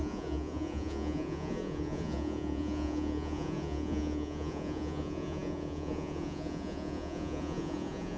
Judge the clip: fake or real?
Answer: fake